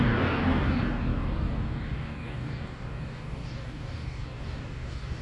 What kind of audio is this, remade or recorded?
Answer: remade